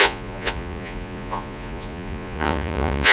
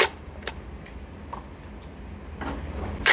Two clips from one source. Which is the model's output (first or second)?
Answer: first